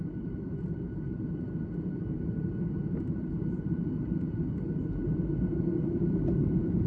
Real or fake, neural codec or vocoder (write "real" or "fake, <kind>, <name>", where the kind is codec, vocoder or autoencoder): fake, vocoder, BigVGAN v2